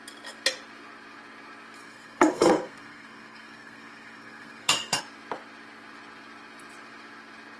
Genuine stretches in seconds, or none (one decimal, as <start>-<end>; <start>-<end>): 0.0-1.8; 5.0-7.6